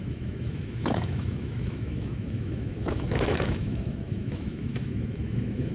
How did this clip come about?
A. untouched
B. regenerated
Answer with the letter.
B